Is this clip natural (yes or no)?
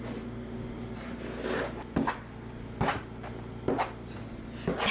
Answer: yes